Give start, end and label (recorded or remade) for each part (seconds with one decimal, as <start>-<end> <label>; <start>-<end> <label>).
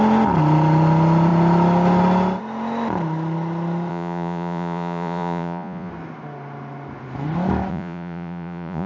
0.0-3.9 recorded; 3.9-5.9 remade; 5.9-7.7 recorded; 7.7-8.9 remade